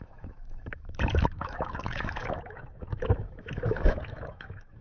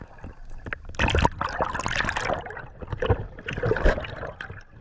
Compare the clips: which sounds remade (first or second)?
first